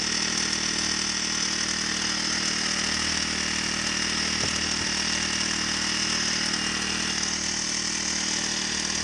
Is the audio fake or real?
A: real